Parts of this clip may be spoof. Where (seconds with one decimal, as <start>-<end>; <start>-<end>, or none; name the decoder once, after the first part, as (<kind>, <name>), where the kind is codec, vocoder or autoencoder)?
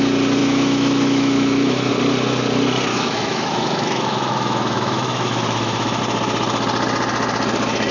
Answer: 0.4-1.9 (autoencoder, DAC-VAE); 2.9-6.0